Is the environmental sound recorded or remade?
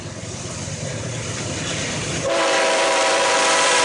remade